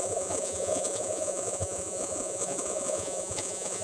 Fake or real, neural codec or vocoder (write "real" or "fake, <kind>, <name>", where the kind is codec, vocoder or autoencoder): fake, vocoder, Vocos